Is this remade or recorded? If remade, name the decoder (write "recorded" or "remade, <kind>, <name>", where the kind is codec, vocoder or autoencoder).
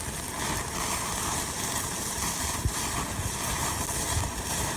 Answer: remade, vocoder, BigVGAN v2